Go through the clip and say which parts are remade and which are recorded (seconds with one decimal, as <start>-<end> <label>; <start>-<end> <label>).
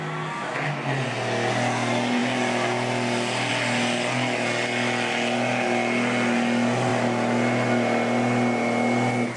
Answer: 0.0-9.4 recorded